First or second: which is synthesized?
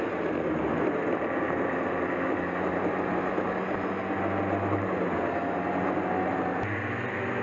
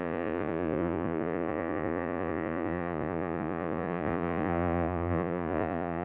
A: second